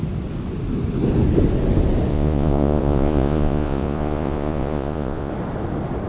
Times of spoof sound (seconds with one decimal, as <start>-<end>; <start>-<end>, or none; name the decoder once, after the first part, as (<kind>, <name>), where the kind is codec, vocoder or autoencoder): 2.1-5.3 (vocoder, Vocos)